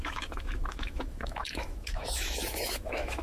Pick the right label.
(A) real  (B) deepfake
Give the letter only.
B